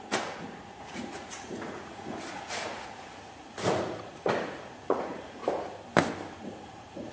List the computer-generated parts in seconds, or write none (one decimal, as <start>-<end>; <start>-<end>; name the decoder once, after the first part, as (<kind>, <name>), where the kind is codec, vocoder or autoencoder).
0.0-5.4 (vocoder, Vocos); 6.5-7.1

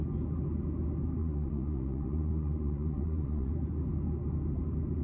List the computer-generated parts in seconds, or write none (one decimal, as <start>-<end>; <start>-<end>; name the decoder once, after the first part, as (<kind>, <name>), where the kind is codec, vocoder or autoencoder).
1.2-3.5 (vocoder, Vocos)

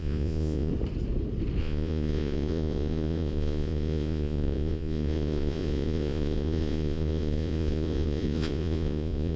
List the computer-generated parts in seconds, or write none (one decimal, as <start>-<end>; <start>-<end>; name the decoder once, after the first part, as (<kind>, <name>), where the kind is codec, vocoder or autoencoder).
0.0-0.7 (vocoder, Vocos); 1.6-9.4

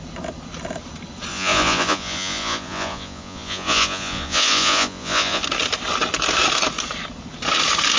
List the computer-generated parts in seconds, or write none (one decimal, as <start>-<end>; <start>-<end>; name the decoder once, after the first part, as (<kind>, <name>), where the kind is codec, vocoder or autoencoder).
1.3-5.4 (vocoder, Vocos)